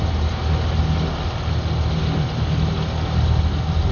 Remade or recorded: recorded